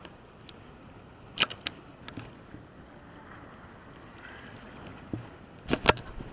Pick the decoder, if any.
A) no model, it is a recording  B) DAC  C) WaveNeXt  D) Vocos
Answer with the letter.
A